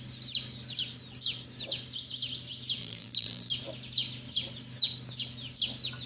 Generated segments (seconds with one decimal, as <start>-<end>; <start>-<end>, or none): 2.8-3.5